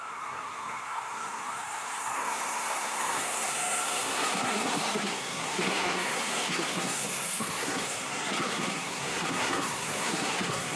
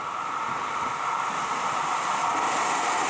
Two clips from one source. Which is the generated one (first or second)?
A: first